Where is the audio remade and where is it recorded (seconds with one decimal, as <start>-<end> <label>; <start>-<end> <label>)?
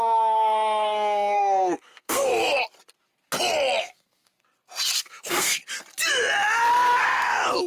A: 0.0-2.3 remade; 2.3-3.8 recorded; 3.8-4.3 remade; 4.3-5.0 recorded; 5.0-5.6 remade; 5.6-7.0 recorded; 7.0-7.7 remade